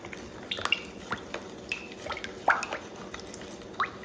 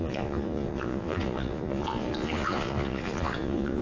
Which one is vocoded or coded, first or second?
second